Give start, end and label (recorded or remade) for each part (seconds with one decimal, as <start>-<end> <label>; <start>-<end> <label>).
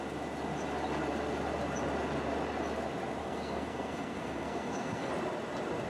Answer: 0.0-3.2 recorded; 3.2-5.1 remade; 5.1-5.9 recorded